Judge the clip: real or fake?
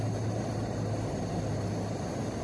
real